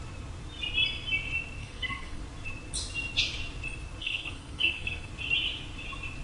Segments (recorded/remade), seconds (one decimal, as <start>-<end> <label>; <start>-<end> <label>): 0.0-1.6 recorded; 1.6-2.2 remade; 2.2-4.0 recorded; 4.0-5.1 remade; 5.1-6.2 recorded